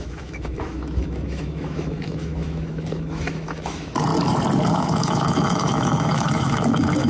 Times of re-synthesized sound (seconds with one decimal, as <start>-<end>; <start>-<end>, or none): 0.0-4.1; 4.7-7.1